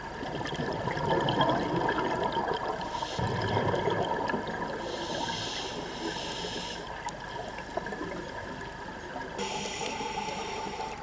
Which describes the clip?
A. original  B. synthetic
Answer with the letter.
A